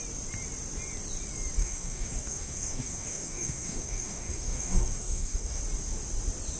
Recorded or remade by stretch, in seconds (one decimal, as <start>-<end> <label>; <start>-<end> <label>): 0.0-1.6 recorded; 1.6-5.6 remade; 5.6-6.6 recorded